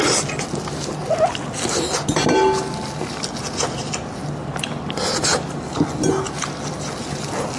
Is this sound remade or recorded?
recorded